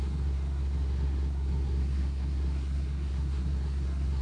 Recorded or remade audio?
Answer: remade